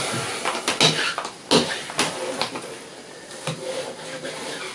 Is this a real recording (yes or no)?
yes